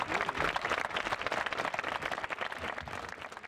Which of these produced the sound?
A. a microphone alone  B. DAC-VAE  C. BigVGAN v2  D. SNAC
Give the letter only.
A